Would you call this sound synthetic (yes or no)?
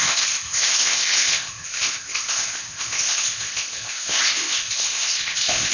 yes